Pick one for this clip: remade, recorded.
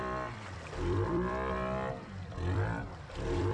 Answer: remade